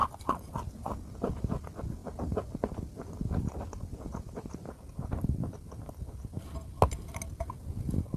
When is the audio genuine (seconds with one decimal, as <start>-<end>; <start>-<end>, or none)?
0.0-8.2